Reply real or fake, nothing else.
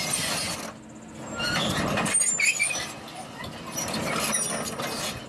real